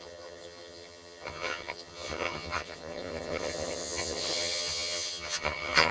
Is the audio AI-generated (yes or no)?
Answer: yes